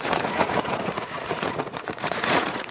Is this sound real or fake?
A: fake